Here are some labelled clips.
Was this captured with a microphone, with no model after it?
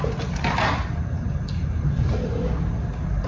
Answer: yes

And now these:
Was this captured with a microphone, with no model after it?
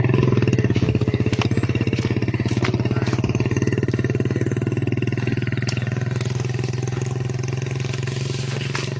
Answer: yes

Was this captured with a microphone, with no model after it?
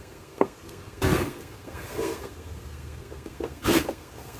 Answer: no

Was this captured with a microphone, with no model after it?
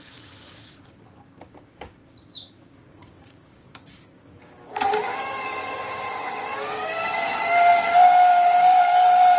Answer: no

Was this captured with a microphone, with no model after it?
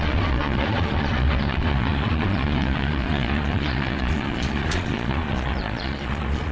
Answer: no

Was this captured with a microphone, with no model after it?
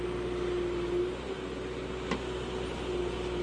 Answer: yes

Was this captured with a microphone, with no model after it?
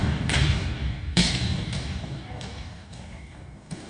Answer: no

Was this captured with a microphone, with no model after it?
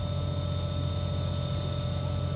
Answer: yes